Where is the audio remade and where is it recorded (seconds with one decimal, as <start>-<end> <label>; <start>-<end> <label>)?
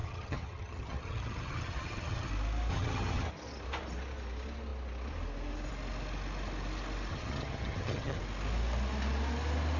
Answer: 0.0-2.3 remade; 2.3-2.7 recorded; 2.7-3.3 remade; 3.3-7.1 recorded; 7.1-8.2 remade; 8.2-9.8 recorded